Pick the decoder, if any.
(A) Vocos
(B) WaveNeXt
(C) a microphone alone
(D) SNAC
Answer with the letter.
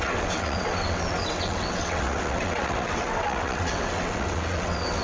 B